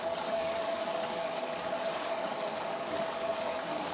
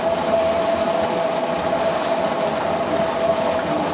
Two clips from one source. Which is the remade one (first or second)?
first